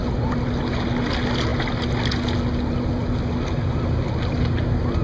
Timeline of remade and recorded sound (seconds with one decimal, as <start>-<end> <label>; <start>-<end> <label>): 0.0-5.0 recorded